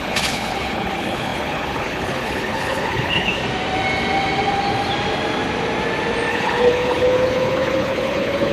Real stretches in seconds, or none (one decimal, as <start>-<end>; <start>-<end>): 3.4-6.3